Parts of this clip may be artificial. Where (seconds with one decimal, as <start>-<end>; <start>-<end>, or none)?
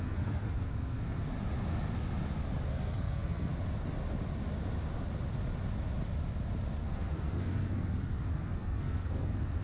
0.0-1.3; 2.6-3.5; 6.8-9.6